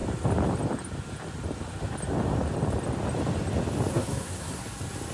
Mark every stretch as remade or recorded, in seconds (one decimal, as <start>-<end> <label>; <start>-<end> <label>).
0.0-3.9 recorded; 3.9-4.6 remade; 4.6-5.1 recorded